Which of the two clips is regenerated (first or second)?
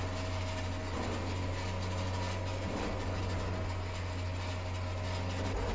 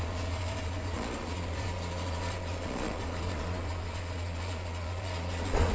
second